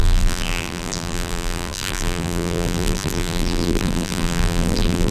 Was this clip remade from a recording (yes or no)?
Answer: yes